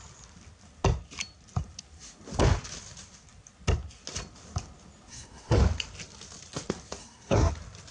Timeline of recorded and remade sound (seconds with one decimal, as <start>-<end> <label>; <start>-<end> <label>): 0.0-5.1 recorded; 5.1-5.6 remade; 5.6-7.0 recorded; 7.0-7.5 remade; 7.5-7.9 recorded